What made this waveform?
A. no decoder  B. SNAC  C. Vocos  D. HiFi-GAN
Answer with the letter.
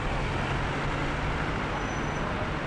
A